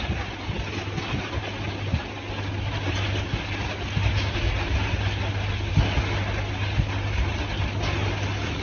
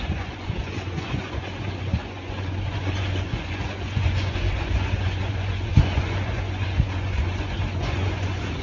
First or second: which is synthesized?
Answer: second